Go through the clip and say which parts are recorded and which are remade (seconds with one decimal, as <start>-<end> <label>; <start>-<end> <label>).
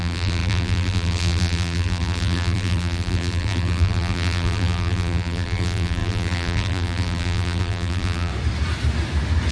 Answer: 0.0-8.3 remade; 8.3-9.5 recorded